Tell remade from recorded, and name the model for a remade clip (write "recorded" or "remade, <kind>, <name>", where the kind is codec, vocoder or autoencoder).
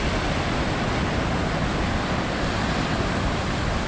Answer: recorded